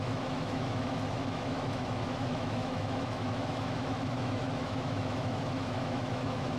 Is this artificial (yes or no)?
yes